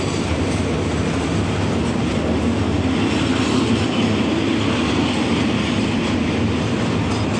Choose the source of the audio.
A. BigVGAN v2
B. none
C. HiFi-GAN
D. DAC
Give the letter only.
B